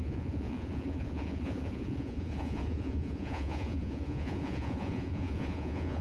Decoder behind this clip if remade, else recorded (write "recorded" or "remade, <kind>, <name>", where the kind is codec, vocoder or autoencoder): remade, vocoder, Vocos